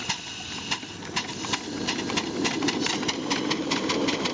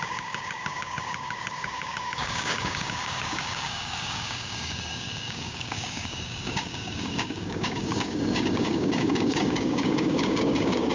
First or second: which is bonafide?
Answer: first